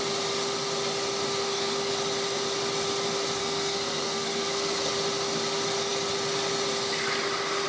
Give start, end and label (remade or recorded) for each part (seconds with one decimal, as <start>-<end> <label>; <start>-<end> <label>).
0.0-1.4 recorded; 1.4-1.9 remade; 1.9-3.4 recorded; 3.4-4.9 remade; 4.9-7.7 recorded